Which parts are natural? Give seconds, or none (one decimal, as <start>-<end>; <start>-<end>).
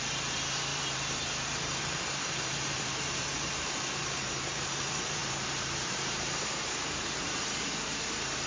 none